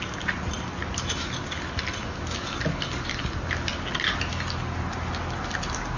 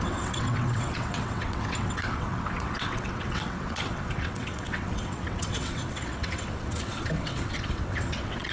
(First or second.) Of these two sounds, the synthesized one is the second